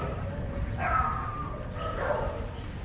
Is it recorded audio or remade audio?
recorded